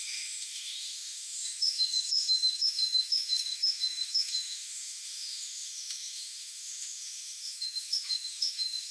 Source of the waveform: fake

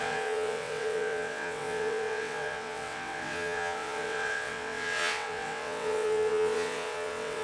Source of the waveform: fake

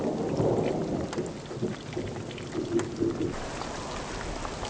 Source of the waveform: real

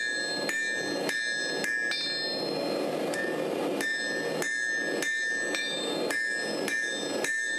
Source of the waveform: real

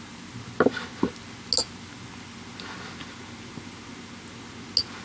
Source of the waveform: real